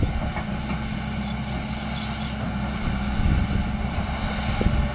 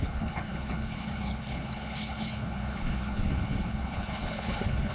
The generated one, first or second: second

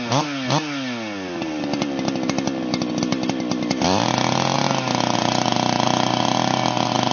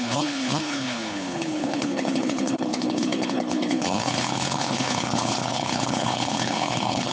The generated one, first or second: second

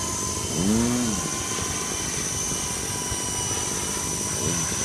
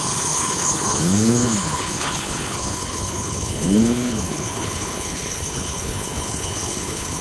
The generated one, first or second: second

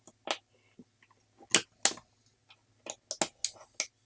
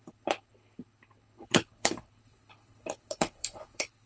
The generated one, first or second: second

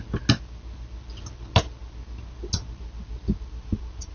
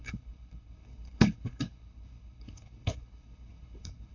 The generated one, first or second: second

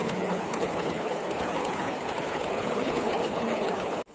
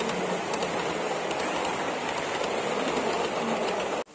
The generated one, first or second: first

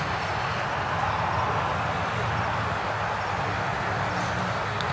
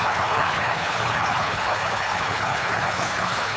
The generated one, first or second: second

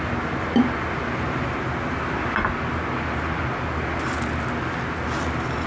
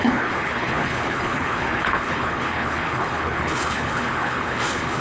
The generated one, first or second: second